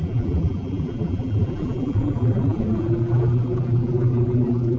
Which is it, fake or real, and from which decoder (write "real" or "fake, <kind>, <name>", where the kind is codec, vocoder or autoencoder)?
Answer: fake, vocoder, BigVGAN v2